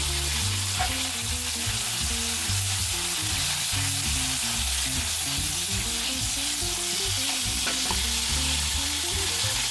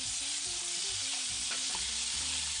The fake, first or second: second